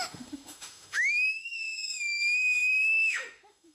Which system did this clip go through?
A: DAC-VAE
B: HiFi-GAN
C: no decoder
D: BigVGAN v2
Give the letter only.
A